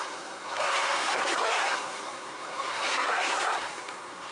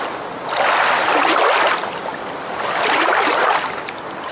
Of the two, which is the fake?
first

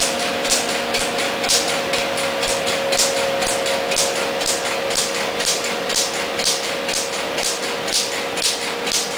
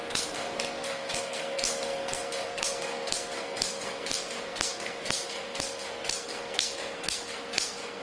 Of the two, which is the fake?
second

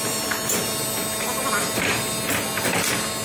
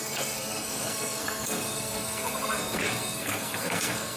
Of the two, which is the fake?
second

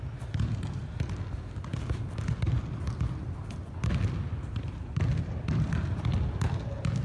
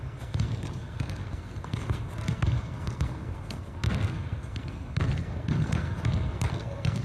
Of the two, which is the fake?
second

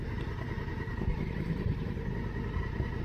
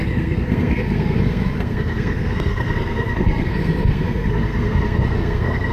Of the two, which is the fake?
second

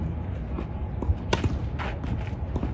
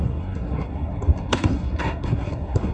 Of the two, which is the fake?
second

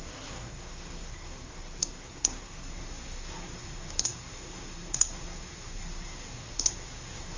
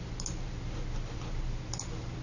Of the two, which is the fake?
first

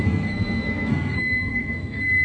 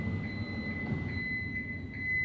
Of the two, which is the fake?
first